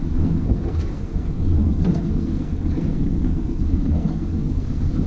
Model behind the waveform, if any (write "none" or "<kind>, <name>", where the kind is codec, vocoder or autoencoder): codec, SNAC